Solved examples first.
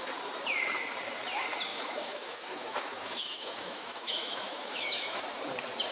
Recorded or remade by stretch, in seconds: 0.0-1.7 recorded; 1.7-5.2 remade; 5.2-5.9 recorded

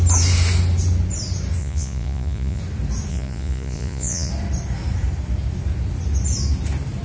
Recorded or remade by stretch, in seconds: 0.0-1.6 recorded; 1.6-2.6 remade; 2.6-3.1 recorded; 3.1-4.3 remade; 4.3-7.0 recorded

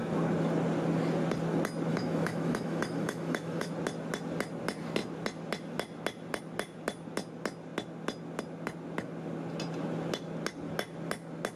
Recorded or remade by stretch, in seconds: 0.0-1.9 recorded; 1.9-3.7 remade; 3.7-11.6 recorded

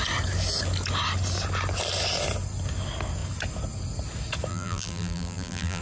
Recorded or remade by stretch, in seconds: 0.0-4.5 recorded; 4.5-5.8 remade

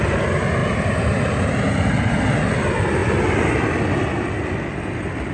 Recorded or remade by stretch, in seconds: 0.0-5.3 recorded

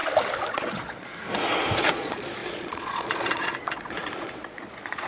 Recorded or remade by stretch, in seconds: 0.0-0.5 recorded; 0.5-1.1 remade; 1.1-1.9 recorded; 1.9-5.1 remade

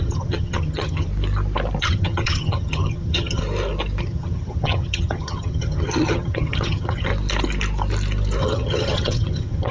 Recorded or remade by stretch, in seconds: 0.0-1.1 remade; 1.1-1.8 recorded; 1.8-3.4 remade; 3.4-4.0 recorded; 4.0-7.1 remade; 7.1-8.4 recorded; 8.4-9.7 remade